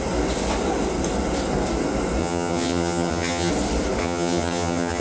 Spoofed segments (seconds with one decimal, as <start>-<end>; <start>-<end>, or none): 2.2-3.5; 4.0-5.0